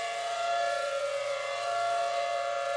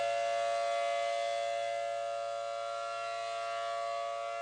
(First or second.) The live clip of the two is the second